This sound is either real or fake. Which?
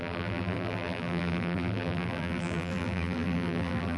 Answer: fake